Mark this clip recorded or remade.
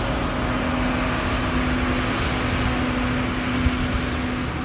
recorded